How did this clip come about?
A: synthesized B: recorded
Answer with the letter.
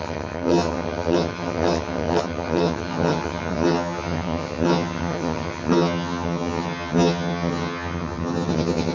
A